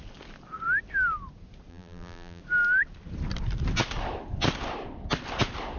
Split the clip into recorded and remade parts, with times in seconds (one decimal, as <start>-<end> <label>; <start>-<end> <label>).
0.0-1.7 recorded; 1.7-2.4 remade; 2.4-5.8 recorded